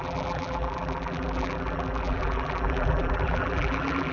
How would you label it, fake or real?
fake